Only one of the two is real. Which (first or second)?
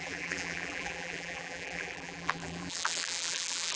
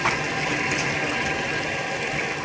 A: second